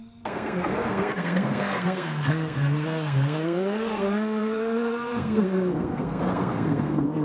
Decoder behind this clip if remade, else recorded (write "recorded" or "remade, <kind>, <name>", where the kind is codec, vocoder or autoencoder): remade, codec, SNAC